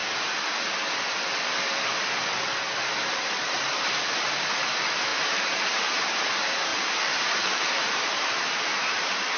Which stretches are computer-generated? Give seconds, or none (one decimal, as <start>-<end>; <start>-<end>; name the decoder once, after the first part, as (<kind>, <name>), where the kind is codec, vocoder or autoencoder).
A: 5.1-5.9 (vocoder, BigVGAN v2); 6.7-9.4